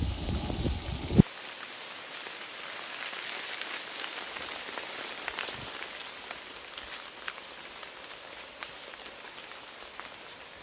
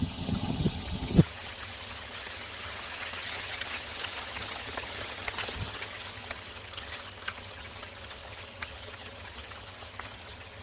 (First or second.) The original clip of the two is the first